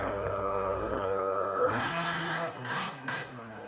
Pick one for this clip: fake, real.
fake